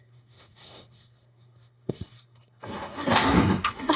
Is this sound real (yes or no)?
no